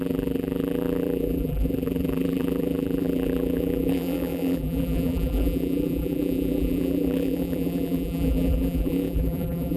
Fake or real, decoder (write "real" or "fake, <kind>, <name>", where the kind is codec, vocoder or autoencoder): fake, vocoder, BigVGAN v2